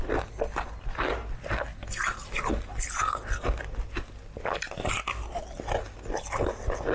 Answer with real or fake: real